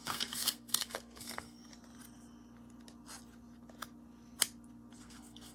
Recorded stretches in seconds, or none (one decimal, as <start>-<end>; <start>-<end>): 1.7-5.0